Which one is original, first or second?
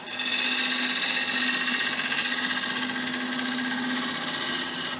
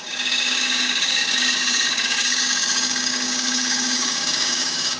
first